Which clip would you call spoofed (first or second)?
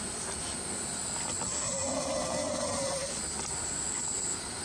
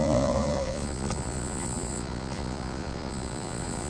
second